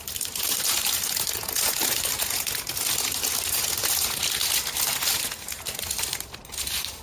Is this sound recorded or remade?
recorded